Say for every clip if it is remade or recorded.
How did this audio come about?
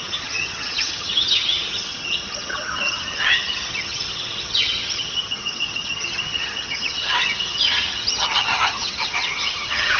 remade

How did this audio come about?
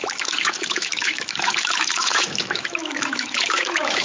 remade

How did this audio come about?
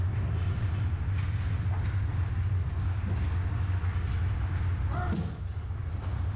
recorded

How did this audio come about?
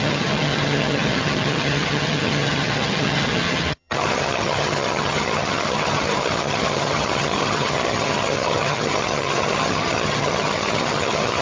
remade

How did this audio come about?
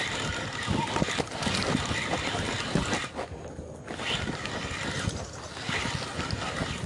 recorded